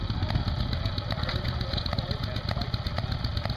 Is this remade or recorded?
recorded